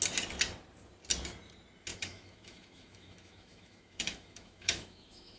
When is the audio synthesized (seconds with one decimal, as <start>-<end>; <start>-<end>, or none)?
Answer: 1.9-5.4